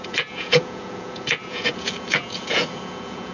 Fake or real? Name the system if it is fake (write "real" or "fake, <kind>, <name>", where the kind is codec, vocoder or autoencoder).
fake, vocoder, Vocos